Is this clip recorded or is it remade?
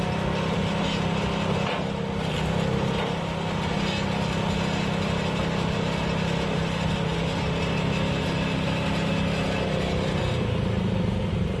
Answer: recorded